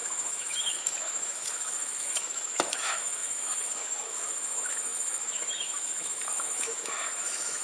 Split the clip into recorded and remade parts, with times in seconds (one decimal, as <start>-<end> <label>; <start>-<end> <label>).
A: 0.0-7.6 remade